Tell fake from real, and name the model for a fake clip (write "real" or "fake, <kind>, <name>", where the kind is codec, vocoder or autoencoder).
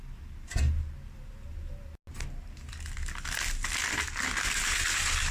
real